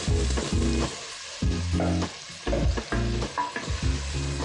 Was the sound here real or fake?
real